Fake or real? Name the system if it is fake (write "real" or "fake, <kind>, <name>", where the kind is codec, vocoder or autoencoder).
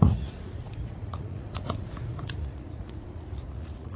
fake, vocoder, Vocos